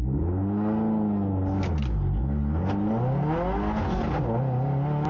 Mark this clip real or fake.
real